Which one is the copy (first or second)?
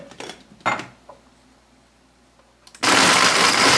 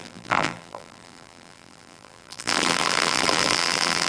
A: second